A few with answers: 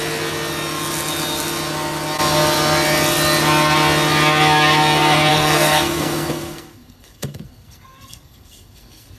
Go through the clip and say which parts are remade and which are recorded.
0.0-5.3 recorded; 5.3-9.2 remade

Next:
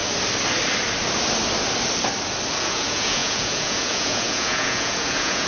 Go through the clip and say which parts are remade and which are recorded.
0.0-2.6 recorded; 2.6-5.5 remade

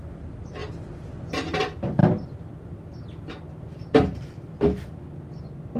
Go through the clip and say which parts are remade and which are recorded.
0.0-5.8 recorded

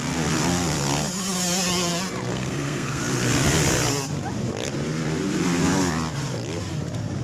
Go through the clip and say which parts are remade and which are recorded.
0.0-2.3 recorded; 2.3-3.0 remade; 3.0-7.2 recorded

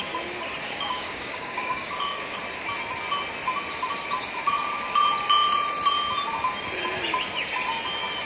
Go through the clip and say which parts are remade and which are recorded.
0.0-0.6 recorded; 0.6-2.4 remade; 2.4-8.2 recorded

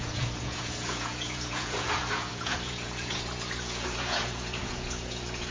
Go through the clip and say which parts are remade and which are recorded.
0.0-5.5 remade

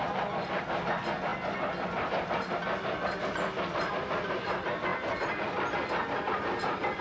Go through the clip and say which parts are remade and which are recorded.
0.0-7.0 recorded